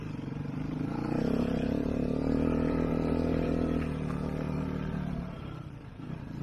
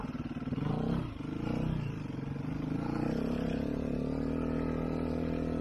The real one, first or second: second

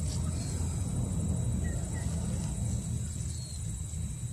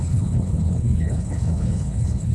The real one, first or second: first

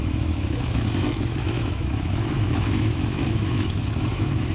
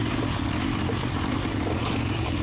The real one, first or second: second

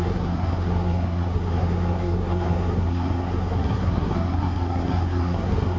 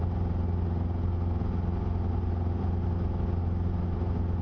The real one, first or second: second